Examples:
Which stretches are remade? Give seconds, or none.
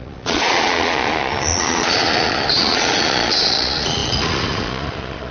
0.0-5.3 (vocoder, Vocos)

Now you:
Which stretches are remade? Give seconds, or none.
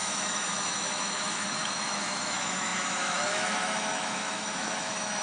0.0-5.2 (autoencoder, DAC-VAE)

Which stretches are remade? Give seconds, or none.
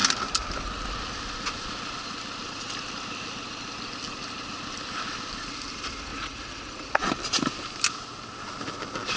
6.1-7.1 (vocoder, Vocos)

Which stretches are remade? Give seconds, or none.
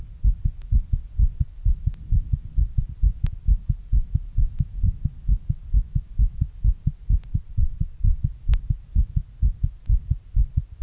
7.3-8.2 (vocoder, Vocos)